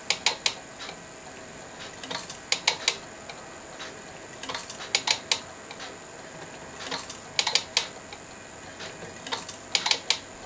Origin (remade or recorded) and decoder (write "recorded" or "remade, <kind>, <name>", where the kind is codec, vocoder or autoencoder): recorded